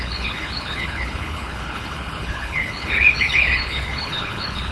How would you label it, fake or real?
fake